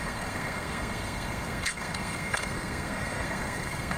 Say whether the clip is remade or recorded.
remade